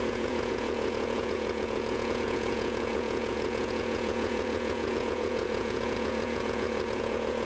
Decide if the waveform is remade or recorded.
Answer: remade